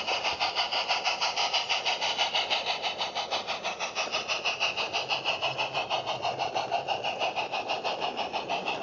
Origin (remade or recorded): recorded